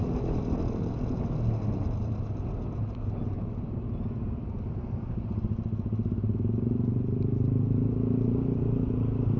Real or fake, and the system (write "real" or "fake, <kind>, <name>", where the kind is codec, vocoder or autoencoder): real